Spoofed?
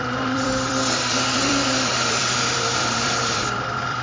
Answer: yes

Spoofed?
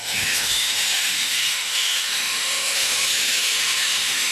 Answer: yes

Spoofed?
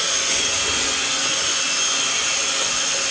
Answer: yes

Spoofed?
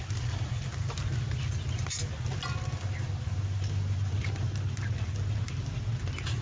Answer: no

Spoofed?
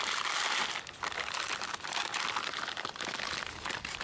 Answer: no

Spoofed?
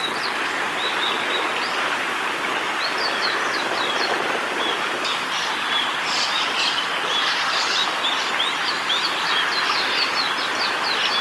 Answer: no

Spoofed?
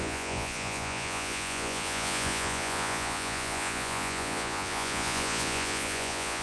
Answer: yes